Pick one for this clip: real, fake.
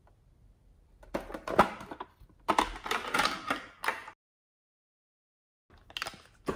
real